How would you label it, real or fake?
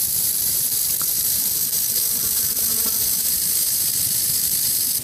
fake